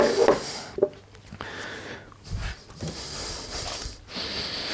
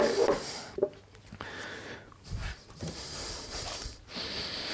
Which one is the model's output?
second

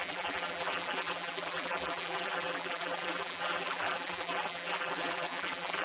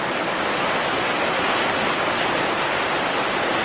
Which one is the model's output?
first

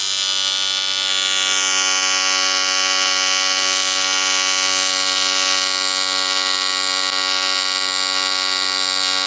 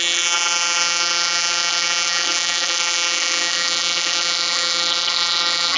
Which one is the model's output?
second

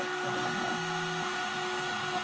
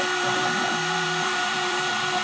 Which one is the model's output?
second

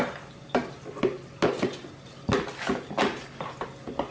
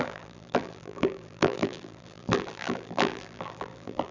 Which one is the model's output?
second